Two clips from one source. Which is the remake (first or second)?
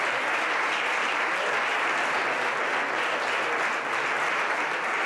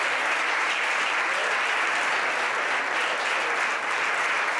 second